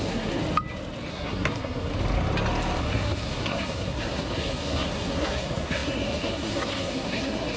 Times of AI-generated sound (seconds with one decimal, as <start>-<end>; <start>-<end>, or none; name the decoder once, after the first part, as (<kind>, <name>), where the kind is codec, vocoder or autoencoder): 0.0-0.4 (codec, SNAC); 1.1-1.9; 2.8-7.6